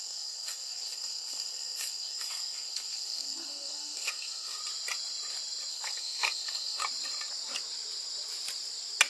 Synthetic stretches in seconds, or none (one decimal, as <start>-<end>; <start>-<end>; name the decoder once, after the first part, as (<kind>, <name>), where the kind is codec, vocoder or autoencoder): 0.0-4.6 (codec, SNAC); 5.7-6.8